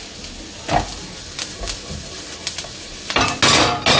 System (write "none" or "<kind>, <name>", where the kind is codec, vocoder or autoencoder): none